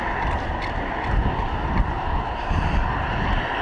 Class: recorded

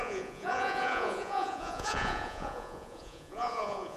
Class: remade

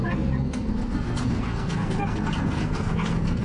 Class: remade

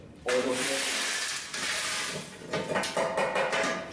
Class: recorded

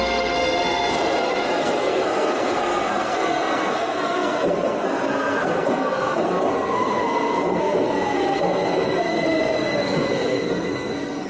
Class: remade